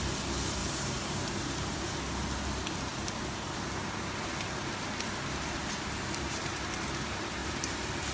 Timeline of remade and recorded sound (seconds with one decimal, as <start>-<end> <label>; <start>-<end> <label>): 0.0-0.6 recorded; 0.6-2.0 remade; 2.0-5.6 recorded; 5.6-6.4 remade; 6.4-7.4 recorded; 7.4-8.1 remade